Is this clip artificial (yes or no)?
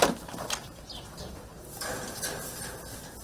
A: no